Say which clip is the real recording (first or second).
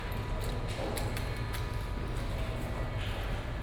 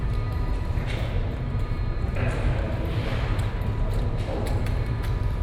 first